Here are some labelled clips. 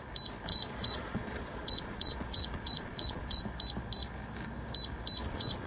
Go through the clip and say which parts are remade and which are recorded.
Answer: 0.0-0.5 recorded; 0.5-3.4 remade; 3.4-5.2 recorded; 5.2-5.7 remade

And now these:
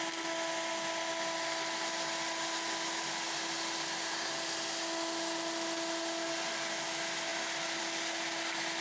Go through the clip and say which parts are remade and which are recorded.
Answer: 0.0-8.8 recorded

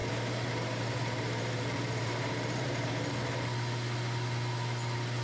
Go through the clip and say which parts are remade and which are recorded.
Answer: 0.0-3.1 remade; 3.1-5.2 recorded

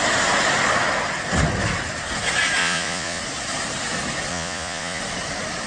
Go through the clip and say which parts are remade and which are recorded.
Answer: 0.0-2.6 recorded; 2.6-3.2 remade; 3.2-4.3 recorded; 4.3-5.0 remade; 5.0-5.7 recorded

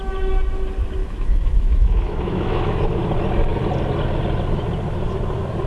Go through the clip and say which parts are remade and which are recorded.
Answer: 0.0-1.0 recorded; 1.0-3.0 remade; 3.0-5.7 recorded